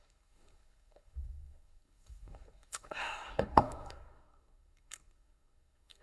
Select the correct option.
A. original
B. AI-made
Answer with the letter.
B